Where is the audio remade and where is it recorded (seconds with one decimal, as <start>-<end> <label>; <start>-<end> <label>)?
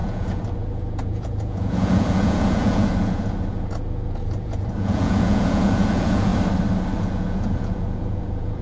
0.0-6.3 remade; 6.3-7.0 recorded; 7.0-8.6 remade